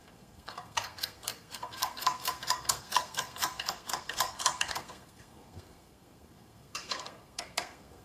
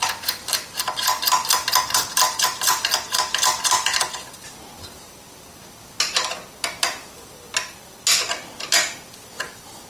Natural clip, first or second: second